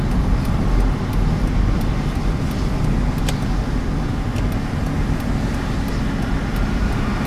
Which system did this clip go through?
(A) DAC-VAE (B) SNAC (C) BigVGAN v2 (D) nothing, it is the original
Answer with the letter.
D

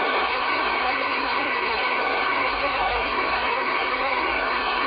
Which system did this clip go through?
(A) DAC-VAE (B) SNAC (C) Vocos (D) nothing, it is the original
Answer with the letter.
B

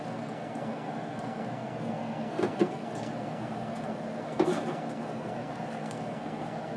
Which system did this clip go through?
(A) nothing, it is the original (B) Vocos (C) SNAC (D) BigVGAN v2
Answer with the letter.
C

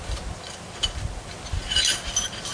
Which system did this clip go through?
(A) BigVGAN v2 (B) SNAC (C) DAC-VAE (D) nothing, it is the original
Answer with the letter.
D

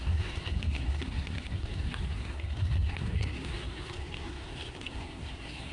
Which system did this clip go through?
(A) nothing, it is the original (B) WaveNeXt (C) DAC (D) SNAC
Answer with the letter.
D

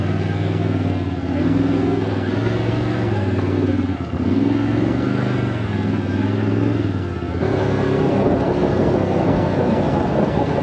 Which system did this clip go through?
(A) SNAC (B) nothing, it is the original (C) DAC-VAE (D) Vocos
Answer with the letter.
A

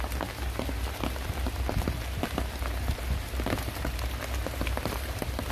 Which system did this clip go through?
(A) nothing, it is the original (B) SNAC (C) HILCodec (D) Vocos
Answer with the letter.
A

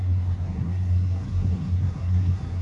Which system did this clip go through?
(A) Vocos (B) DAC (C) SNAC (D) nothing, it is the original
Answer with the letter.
C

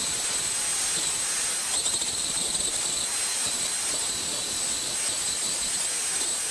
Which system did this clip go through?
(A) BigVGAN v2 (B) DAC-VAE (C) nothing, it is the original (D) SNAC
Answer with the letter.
C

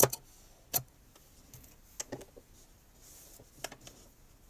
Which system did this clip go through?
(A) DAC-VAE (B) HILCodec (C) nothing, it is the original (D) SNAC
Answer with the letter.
C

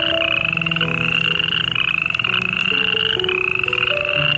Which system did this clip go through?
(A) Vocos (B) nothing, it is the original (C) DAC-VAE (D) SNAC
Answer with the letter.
B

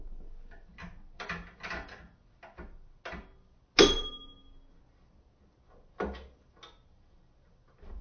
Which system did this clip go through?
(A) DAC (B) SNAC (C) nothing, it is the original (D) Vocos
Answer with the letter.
C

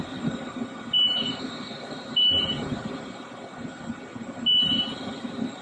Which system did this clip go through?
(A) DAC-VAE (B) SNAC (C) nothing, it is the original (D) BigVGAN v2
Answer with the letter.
C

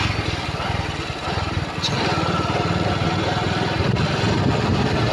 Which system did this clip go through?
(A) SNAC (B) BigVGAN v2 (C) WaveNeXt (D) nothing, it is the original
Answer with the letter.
D